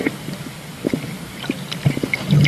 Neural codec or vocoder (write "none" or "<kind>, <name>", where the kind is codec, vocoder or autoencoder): none